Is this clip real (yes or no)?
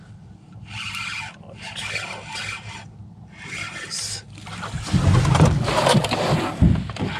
yes